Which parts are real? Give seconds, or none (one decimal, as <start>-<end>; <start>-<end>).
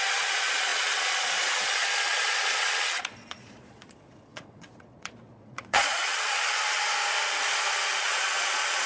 6.9-8.0